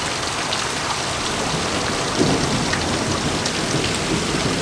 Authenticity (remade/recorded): recorded